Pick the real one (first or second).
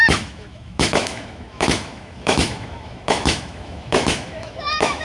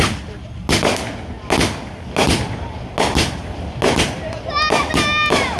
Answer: second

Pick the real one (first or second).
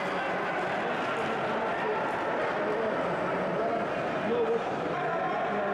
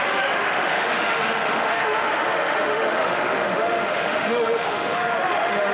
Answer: first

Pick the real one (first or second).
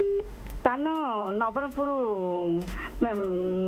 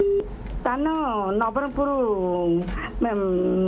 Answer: second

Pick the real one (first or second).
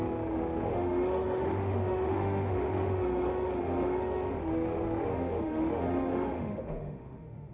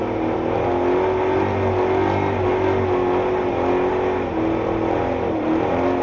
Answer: second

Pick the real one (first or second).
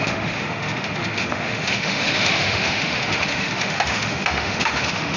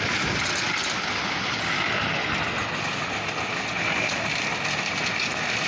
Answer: second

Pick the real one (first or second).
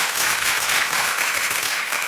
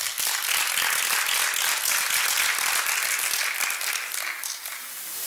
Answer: second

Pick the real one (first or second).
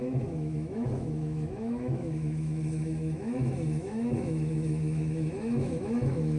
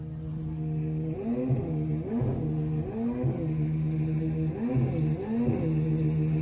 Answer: second